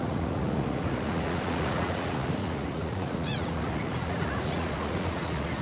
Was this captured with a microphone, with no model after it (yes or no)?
no